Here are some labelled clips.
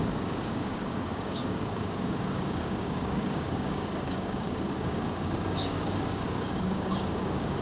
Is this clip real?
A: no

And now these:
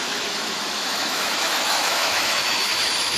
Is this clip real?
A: no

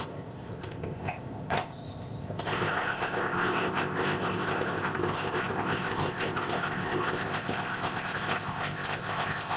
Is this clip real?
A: no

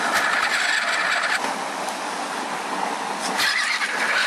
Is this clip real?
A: yes